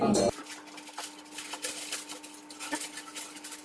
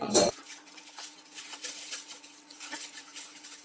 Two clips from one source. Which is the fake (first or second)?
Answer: second